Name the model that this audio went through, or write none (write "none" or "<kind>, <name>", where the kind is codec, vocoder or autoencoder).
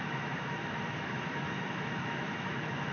autoencoder, DAC-VAE